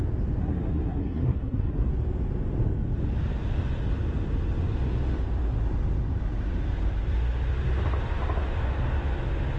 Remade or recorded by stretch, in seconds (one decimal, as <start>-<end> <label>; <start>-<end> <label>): 0.0-0.4 recorded; 0.4-1.9 remade; 1.9-9.6 recorded